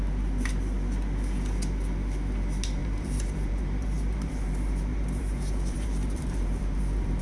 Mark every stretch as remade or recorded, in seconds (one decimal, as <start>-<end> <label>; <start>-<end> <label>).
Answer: 0.0-2.8 recorded; 2.8-7.2 remade